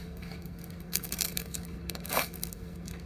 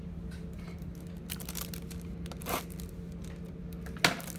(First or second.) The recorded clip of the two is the second